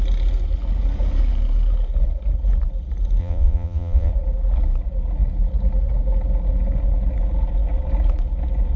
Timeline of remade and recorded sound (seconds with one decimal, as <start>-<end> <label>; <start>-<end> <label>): 0.0-3.2 recorded; 3.2-4.1 remade; 4.1-8.8 recorded